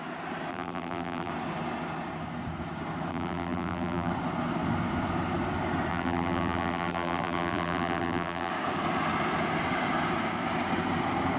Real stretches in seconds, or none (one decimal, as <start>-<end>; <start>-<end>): 0.0-0.5; 1.3-3.1; 4.1-5.9; 8.5-11.4